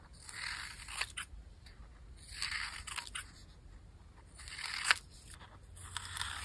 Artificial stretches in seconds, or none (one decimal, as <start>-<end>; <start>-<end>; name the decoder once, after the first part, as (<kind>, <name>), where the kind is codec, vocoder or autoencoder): none